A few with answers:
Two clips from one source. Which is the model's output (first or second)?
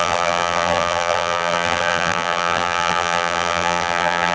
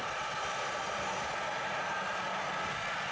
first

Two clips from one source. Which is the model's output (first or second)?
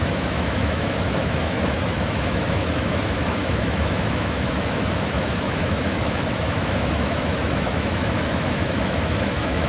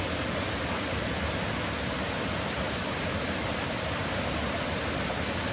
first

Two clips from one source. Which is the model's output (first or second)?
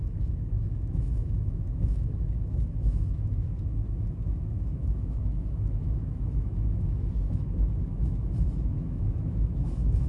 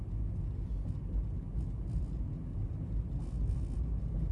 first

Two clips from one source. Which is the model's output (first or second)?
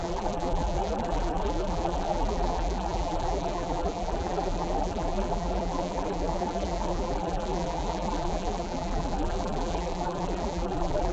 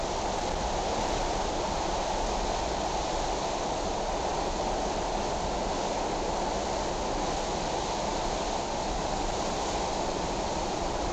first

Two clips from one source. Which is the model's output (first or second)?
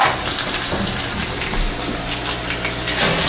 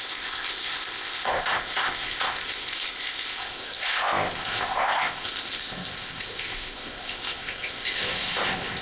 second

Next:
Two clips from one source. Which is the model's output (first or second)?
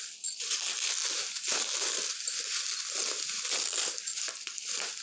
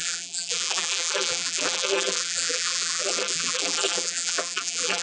second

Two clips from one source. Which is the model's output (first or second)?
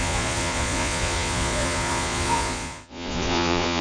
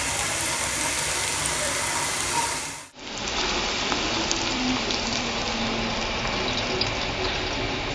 first